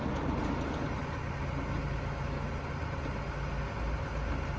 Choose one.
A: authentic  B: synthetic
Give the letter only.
A